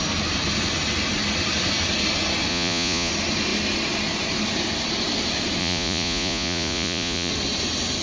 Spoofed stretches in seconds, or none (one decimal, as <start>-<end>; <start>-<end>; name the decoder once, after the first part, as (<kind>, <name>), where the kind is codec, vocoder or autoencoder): 2.5-3.1 (vocoder, Vocos); 5.6-7.3